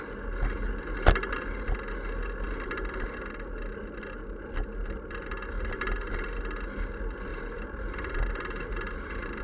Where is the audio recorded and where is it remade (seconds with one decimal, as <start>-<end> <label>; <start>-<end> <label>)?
0.0-7.3 recorded; 7.3-9.4 remade